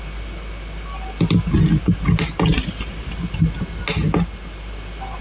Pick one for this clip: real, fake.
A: real